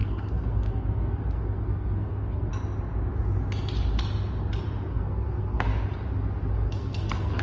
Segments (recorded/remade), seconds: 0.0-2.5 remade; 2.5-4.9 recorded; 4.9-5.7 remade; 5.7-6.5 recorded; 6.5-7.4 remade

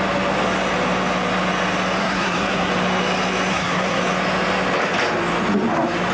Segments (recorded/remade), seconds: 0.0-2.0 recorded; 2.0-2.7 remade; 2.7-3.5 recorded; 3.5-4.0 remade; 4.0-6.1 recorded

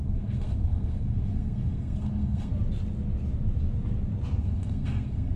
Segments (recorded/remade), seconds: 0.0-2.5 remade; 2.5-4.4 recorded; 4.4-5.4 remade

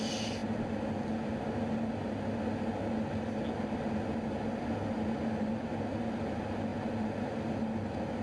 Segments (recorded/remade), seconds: 0.0-8.2 recorded

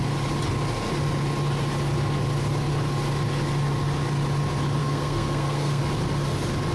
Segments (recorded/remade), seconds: 0.0-4.8 recorded; 4.8-5.8 remade; 5.8-6.7 recorded

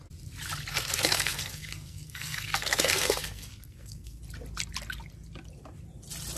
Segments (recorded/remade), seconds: 0.0-0.7 recorded; 0.7-4.2 remade; 4.2-6.4 recorded